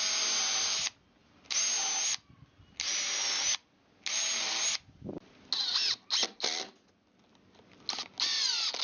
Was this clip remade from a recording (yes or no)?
no